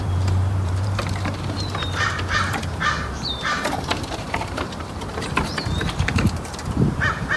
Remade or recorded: remade